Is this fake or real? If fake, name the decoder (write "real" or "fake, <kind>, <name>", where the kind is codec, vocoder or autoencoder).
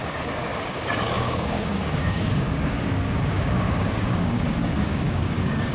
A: fake, codec, DAC